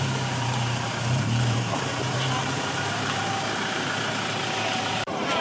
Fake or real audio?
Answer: fake